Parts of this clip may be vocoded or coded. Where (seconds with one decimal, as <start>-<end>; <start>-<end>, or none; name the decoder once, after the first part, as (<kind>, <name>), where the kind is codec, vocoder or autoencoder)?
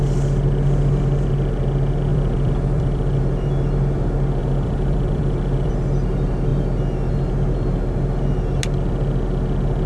2.1-3.2 (vocoder, BigVGAN v2); 4.4-5.7